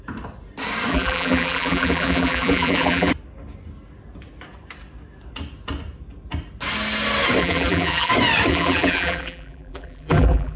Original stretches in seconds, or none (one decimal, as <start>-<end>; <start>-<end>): 0.0-0.9; 3.1-7.4; 8.1-8.5